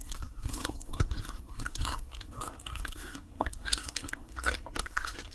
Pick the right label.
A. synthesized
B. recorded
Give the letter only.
A